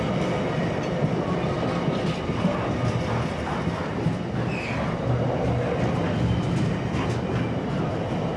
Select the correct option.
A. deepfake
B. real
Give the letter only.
B